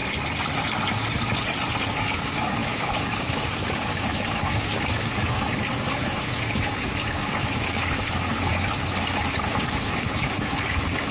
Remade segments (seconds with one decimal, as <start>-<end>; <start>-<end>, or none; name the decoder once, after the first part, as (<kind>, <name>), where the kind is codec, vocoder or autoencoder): 1.9-11.1 (codec, DAC)